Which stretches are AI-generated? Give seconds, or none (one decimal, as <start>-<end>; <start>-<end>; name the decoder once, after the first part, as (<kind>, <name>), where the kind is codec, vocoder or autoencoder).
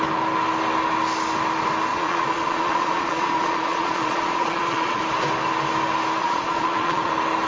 1.9-5.0 (vocoder, Vocos); 6.2-7.1